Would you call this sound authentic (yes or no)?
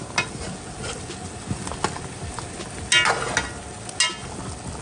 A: yes